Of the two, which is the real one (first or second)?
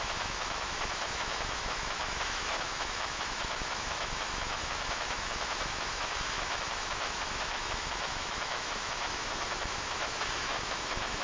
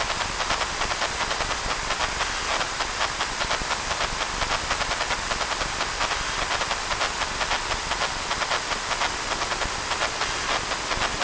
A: second